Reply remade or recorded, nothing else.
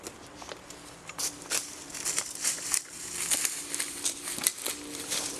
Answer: remade